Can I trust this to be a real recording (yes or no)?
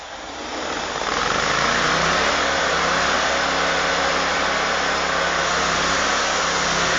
yes